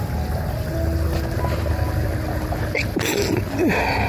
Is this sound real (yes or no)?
yes